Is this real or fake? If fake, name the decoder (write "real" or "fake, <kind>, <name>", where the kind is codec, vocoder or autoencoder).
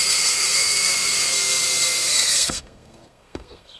fake, codec, SNAC